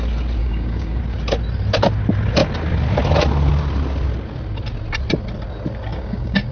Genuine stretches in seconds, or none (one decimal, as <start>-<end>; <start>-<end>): 0.0-0.4; 1.0-5.9